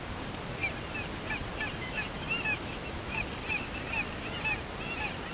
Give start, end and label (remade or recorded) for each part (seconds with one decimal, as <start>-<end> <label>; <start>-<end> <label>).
0.0-1.8 recorded; 1.8-3.2 remade; 3.2-5.3 recorded